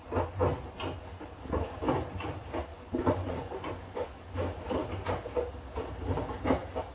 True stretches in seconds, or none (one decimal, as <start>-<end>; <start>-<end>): 0.0-2.7; 4.1-6.9